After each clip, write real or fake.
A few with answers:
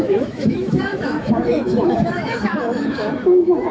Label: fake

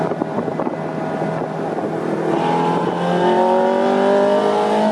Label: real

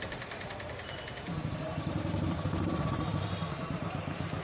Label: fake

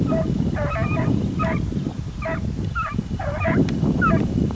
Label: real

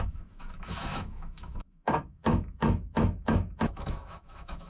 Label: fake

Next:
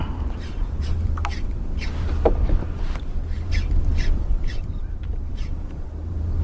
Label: fake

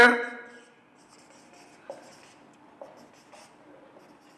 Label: real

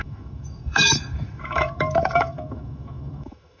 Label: fake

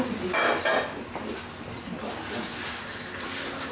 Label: real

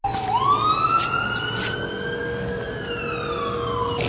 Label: real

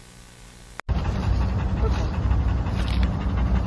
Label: real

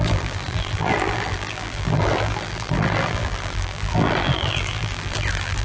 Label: fake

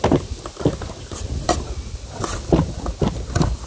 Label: real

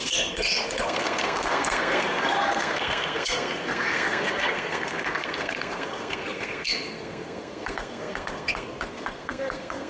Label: fake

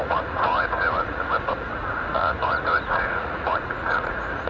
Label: fake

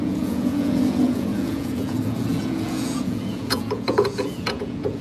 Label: fake